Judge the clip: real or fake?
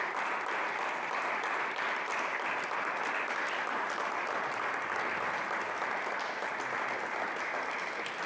real